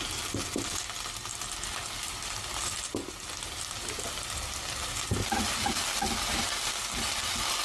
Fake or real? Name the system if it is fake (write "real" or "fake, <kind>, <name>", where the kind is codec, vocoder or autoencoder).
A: real